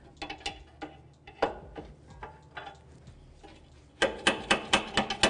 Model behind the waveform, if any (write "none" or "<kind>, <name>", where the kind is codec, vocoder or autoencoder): none